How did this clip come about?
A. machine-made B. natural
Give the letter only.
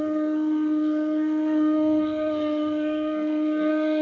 A